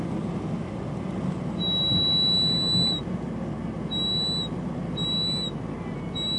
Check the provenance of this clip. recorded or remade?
recorded